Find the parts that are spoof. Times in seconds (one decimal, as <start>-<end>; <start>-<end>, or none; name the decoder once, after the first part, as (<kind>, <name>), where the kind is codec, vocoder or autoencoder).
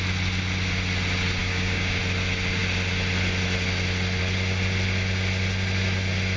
1.4-2.0 (codec, DAC)